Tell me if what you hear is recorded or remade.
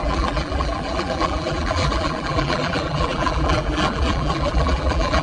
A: remade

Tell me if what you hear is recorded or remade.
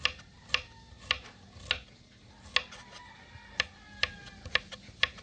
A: recorded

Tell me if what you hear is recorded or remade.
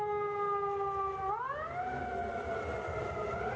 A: recorded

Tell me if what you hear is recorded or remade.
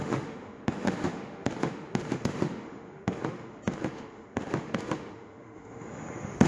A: remade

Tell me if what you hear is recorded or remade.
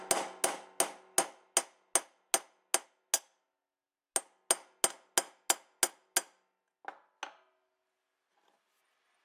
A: recorded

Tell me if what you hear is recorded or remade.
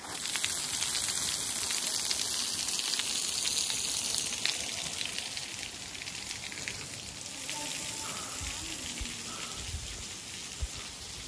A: recorded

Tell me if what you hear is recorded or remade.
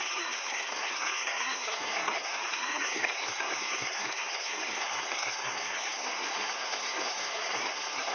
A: remade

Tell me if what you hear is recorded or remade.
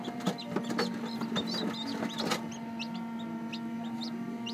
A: recorded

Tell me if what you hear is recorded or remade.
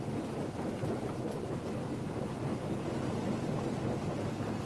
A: recorded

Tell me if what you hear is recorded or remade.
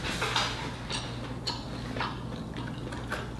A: recorded